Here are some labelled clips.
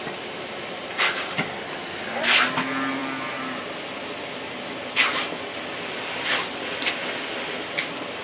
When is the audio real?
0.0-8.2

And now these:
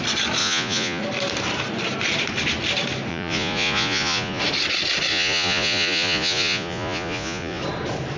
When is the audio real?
0.0-0.4; 1.0-3.1; 4.4-5.1; 7.6-8.2

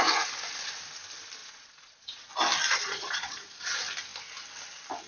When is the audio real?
0.0-1.4; 2.3-2.7; 3.4-5.1

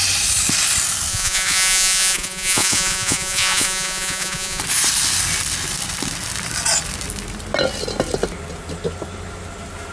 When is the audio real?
0.0-1.1; 4.6-9.9

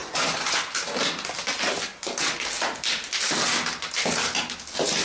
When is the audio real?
0.6-5.0

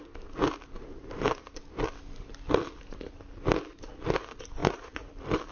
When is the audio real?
0.0-4.6; 5.1-5.5

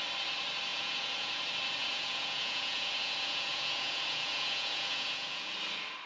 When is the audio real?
0.0-0.7; 1.4-1.8; 5.5-6.1